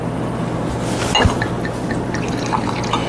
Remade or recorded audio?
recorded